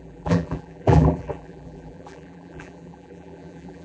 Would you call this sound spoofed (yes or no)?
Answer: yes